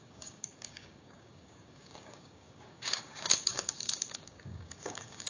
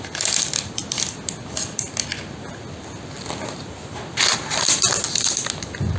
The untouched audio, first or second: second